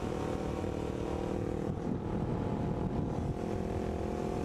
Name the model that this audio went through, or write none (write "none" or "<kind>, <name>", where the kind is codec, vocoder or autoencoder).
none